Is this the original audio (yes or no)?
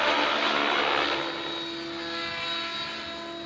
yes